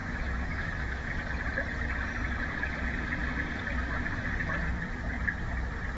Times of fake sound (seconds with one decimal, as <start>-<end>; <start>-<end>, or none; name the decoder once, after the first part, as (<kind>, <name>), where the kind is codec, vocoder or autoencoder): 0.0-1.2 (autoencoder, DAC-VAE)